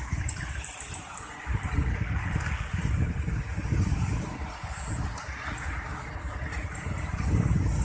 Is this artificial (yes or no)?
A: no